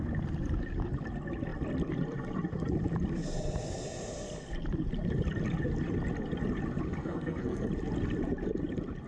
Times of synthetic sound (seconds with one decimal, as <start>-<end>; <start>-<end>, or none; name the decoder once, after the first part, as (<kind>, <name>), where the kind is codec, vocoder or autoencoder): 7.0-7.7 (codec, SNAC)